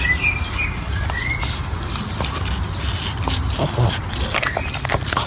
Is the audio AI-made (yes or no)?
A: no